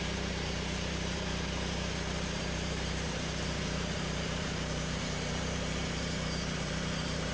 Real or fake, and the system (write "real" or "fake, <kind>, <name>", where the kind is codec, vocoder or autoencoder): fake, vocoder, BigVGAN v2